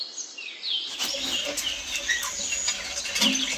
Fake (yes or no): no